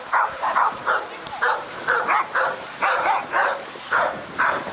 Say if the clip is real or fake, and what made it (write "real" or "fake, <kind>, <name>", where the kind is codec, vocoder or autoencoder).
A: fake, vocoder, BigVGAN v2